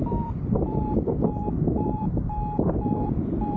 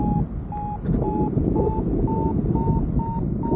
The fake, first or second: first